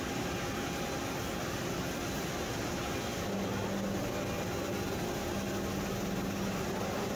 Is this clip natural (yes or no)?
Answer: yes